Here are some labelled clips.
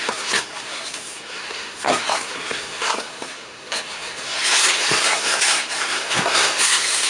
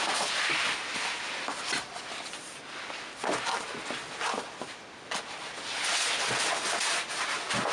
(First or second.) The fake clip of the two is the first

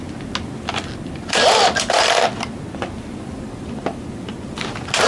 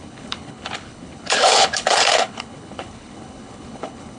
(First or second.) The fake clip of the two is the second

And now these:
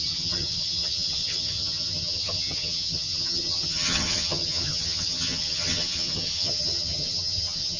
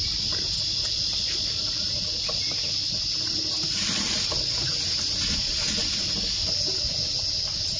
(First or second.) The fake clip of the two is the first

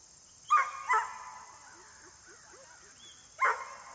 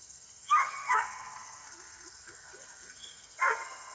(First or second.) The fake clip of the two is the second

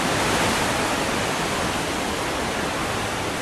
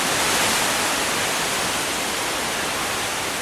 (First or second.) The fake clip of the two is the first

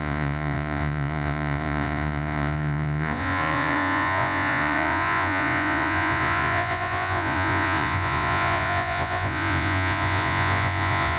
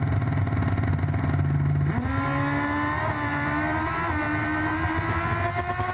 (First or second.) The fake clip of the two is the first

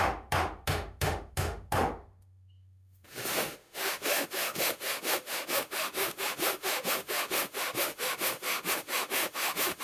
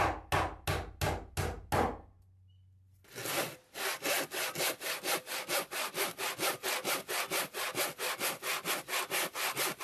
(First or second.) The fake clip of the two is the first